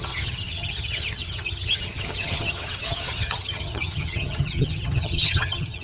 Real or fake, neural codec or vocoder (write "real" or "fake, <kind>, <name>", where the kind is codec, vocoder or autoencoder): fake, vocoder, HiFi-GAN